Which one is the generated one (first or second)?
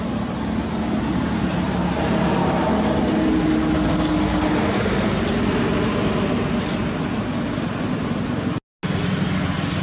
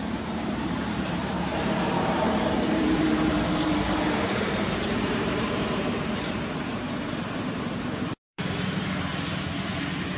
second